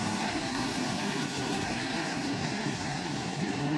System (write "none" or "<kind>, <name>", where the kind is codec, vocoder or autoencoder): codec, SNAC